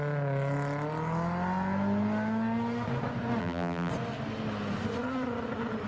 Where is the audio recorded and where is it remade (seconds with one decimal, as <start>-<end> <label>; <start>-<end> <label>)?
0.0-3.4 recorded; 3.4-3.9 remade; 3.9-5.9 recorded